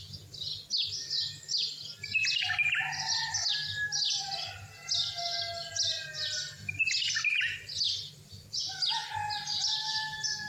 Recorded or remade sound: recorded